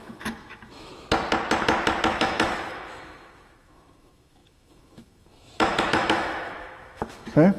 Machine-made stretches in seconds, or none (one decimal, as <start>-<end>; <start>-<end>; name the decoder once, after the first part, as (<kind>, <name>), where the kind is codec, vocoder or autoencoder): 0.0-0.9 (autoencoder, DAC-VAE); 2.1-7.6